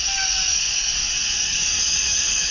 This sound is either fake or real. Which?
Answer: fake